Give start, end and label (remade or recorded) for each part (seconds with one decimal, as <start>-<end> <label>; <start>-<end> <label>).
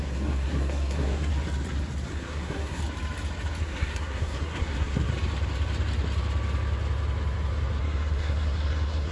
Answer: 0.0-1.3 remade; 1.3-2.1 recorded; 2.1-2.8 remade; 2.8-3.6 recorded; 3.6-5.1 remade; 5.1-7.8 recorded; 7.8-9.1 remade